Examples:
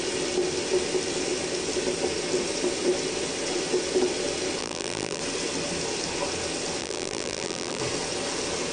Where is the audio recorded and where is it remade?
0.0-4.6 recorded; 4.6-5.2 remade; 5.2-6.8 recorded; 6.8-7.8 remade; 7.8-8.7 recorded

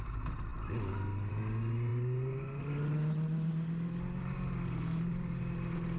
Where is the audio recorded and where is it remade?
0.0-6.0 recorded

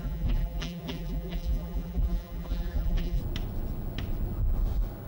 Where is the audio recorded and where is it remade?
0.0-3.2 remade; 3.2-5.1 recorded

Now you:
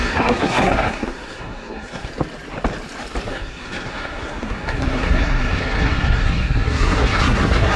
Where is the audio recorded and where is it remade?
0.0-2.1 remade; 2.1-3.3 recorded; 3.3-7.8 remade

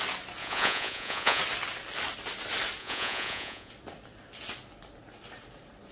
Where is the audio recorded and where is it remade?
0.0-0.4 recorded; 0.4-1.4 remade; 1.4-2.8 recorded; 2.8-3.7 remade; 3.7-5.9 recorded

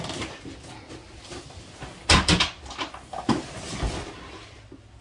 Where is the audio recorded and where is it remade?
0.0-5.0 recorded